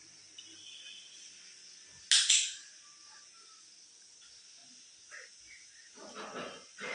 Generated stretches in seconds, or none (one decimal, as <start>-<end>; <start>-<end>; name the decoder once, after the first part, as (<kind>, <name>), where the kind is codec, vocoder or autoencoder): none